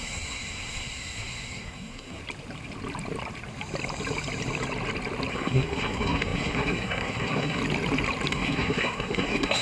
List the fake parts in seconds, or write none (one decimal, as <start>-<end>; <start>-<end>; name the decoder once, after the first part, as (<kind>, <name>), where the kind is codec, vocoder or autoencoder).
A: 0.0-2.2 (codec, SNAC); 5.3-7.6; 8.3-9.6